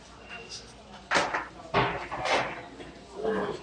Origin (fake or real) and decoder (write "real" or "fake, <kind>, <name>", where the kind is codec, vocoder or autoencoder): real